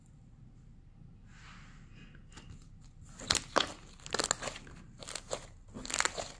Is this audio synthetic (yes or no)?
no